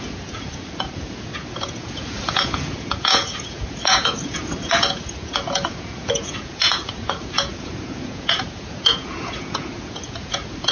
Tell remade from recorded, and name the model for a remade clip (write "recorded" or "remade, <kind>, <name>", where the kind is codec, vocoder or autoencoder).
remade, vocoder, Vocos